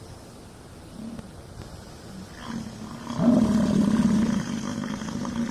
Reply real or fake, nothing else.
real